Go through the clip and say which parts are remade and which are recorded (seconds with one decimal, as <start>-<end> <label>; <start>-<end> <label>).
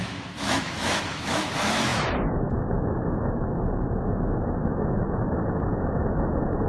0.0-6.7 remade